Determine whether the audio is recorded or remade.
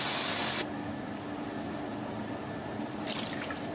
recorded